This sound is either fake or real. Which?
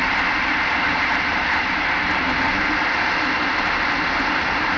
real